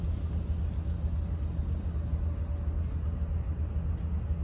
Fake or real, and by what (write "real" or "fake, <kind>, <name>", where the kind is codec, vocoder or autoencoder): real